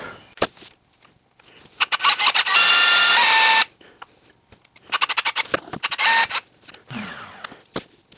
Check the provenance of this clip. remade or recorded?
recorded